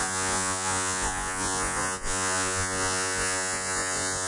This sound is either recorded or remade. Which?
remade